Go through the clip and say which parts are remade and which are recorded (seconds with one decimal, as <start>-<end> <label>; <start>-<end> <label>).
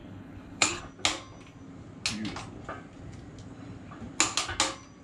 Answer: 0.0-0.8 remade; 0.8-5.0 recorded